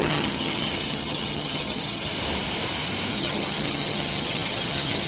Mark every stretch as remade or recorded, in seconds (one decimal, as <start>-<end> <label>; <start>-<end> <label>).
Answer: 0.0-2.1 remade; 2.1-3.1 recorded; 3.1-5.1 remade